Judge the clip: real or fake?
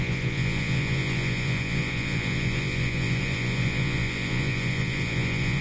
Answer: fake